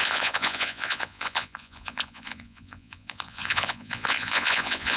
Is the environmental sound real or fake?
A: fake